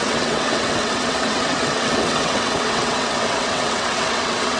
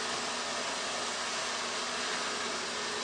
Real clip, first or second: second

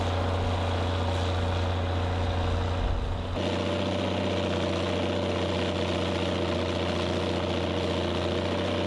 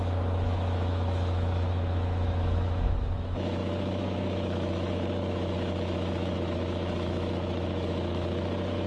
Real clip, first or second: first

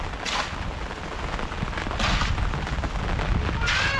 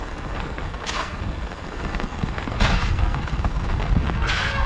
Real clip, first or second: first